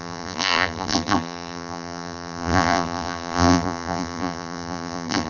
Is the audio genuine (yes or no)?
no